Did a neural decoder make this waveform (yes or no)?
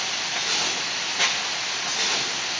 no